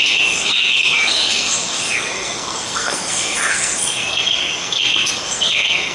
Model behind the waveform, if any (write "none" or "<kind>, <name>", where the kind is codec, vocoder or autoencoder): codec, SNAC